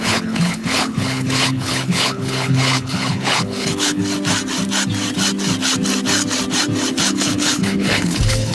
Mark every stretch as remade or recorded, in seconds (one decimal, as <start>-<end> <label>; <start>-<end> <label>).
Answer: 0.0-4.0 remade; 4.0-7.0 recorded; 7.0-8.5 remade